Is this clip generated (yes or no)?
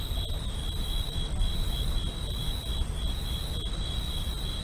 no